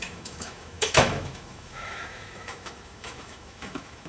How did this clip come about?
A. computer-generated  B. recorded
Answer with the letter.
A